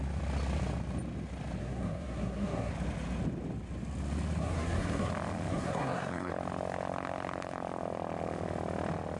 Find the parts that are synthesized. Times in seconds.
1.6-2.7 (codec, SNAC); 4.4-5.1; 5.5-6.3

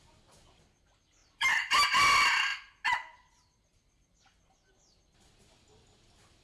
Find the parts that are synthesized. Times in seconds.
1.2-1.7 (vocoder, BigVGAN v2)

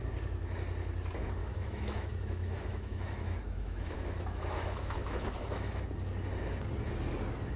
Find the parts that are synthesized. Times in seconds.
1.4-5.8 (autoencoder, DAC-VAE)

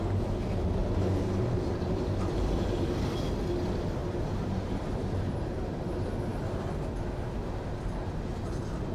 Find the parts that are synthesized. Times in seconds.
0.8-3.1 (vocoder, BigVGAN v2)

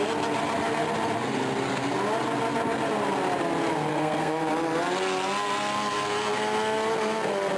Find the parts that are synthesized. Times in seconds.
3.9-4.5 (codec, SNAC)